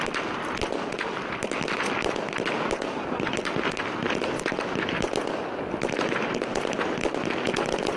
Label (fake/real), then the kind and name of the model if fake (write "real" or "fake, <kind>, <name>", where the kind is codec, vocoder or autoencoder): real